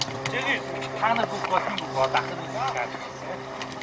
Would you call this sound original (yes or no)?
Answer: yes